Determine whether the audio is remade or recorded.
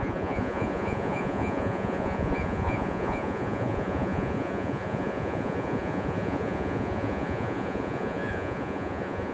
remade